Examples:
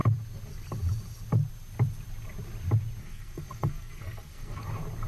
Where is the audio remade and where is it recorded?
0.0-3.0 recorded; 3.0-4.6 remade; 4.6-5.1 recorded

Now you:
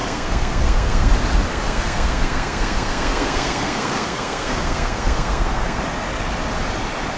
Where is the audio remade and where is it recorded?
0.0-1.1 remade; 1.1-1.5 recorded; 1.5-5.8 remade; 5.8-7.2 recorded